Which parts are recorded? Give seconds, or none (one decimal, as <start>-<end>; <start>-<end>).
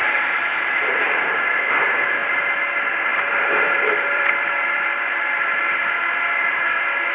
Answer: 1.7-3.1; 5.1-7.1